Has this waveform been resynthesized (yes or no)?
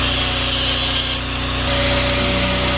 no